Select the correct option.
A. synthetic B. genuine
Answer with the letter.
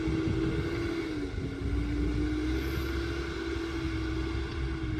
B